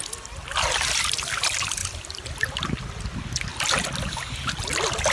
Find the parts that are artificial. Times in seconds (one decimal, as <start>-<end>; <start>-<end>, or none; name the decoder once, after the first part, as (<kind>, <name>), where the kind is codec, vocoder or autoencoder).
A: none